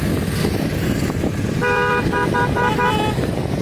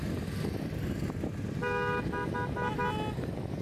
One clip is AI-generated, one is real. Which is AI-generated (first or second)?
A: first